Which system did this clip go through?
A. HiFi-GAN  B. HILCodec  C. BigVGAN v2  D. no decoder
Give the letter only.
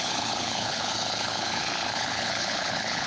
B